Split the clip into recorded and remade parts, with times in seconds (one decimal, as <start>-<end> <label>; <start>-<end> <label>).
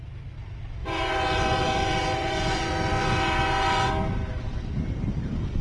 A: 0.0-0.8 recorded; 0.8-3.9 remade; 3.9-5.6 recorded